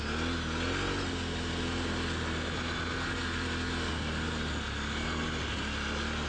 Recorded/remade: recorded